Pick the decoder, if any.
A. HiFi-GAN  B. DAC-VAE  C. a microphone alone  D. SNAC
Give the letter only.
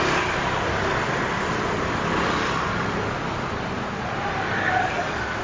C